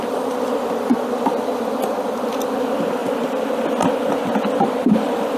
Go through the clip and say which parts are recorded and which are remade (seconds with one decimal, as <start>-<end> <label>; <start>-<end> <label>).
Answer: 0.0-5.4 recorded